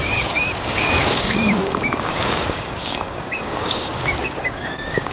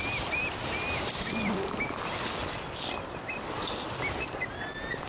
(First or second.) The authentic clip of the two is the second